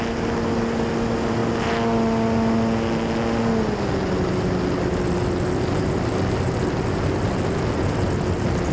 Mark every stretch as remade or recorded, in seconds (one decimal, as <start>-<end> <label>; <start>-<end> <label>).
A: 0.0-8.7 recorded